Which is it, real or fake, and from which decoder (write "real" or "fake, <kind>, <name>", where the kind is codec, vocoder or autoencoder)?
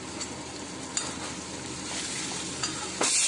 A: real